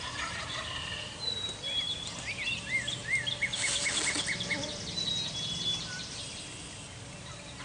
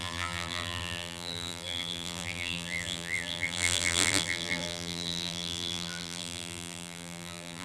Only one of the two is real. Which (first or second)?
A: first